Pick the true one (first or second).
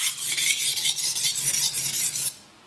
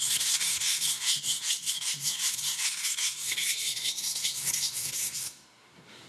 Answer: first